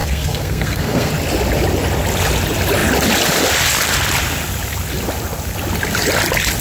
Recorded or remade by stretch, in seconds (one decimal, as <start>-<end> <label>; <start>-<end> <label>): 0.0-1.1 remade; 1.1-6.6 recorded